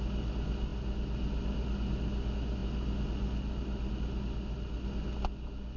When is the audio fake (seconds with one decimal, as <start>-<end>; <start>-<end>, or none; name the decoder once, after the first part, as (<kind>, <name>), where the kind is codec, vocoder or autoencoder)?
none